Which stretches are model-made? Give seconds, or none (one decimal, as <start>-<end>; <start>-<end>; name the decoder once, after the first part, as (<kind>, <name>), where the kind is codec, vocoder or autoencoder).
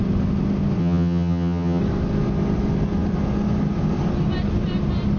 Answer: 0.8-1.8 (vocoder, HiFi-GAN)